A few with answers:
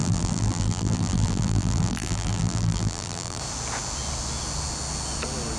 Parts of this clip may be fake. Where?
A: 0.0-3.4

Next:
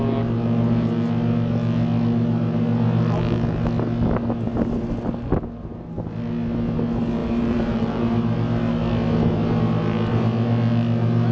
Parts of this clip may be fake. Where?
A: 7.2-8.0

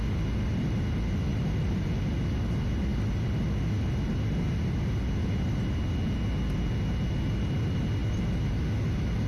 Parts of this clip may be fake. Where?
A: 1.3-2.0

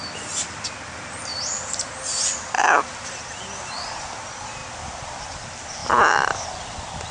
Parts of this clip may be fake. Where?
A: 1.3-4.0; 5.8-7.1